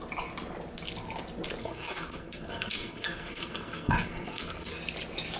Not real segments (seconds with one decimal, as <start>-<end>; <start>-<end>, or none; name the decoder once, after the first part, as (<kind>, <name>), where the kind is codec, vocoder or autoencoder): 1.6-4.8 (codec, SNAC)